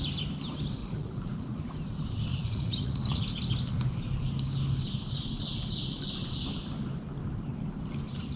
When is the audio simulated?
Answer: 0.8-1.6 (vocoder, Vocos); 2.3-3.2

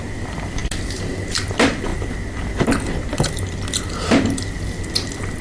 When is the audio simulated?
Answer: none

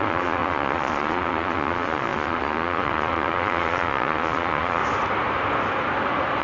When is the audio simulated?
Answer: 0.0-4.8 (vocoder, Vocos)

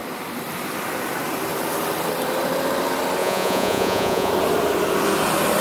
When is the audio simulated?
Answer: 3.2-4.3 (vocoder, Vocos)

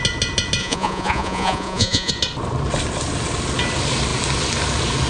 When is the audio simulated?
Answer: 0.6-2.1 (vocoder, Vocos)

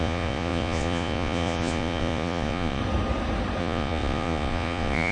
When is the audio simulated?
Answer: 0.0-2.8 (vocoder, Vocos); 3.6-5.1

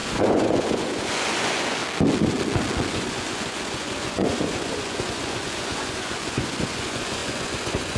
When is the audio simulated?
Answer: 0.0-1.8 (vocoder, Vocos); 2.9-8.0

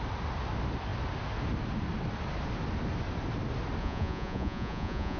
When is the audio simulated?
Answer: 3.8-5.2 (vocoder, Vocos)